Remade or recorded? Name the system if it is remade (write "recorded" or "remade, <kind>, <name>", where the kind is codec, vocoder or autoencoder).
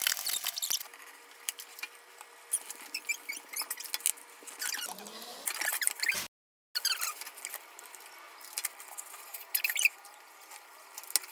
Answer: recorded